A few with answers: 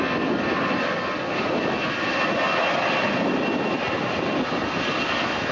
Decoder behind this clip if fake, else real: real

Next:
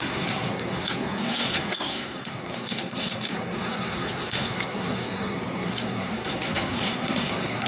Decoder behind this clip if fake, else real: fake, codec, SNAC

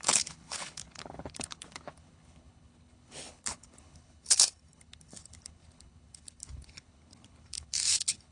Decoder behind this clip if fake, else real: fake, codec, HILCodec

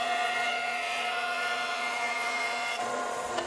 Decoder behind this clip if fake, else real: fake, vocoder, Vocos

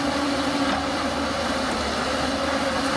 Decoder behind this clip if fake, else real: real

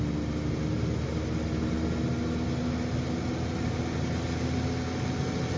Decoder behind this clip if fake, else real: real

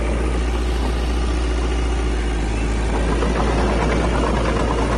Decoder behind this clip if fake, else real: real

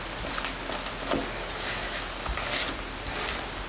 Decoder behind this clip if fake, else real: real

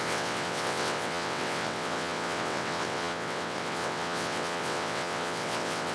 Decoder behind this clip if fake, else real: fake, vocoder, WaveNeXt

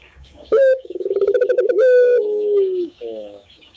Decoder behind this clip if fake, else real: fake, codec, DAC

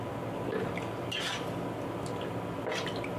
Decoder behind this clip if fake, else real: real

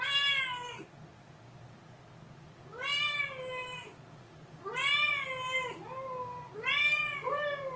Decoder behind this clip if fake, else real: real